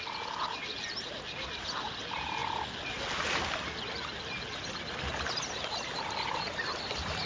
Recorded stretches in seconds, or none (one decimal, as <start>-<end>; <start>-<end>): 0.0-7.3